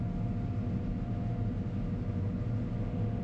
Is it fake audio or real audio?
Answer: real